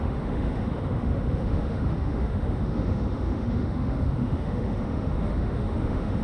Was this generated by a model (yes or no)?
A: yes